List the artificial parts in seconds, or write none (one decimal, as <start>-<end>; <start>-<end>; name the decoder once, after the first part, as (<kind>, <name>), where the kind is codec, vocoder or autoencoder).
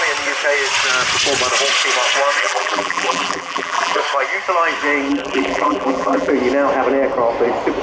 2.4-4.0 (vocoder, BigVGAN v2); 5.1-6.3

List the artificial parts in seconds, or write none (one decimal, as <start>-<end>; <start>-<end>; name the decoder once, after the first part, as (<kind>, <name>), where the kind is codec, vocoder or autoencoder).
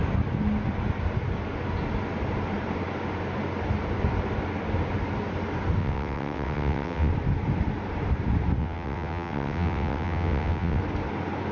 5.8-7.1 (vocoder, WaveNeXt); 8.6-10.8